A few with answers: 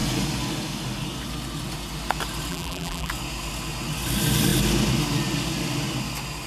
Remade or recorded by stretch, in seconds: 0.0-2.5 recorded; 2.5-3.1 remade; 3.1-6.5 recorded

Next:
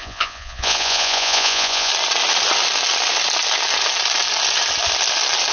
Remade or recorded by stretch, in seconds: 0.0-1.9 remade; 1.9-5.5 recorded

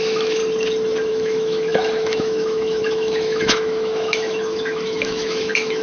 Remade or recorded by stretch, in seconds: 0.0-0.4 remade; 0.4-1.1 recorded; 1.1-5.8 remade

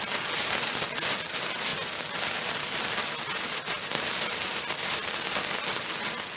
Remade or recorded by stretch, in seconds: 0.0-6.4 recorded

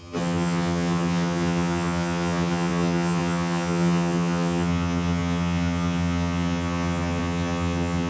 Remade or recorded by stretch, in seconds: 0.0-8.1 remade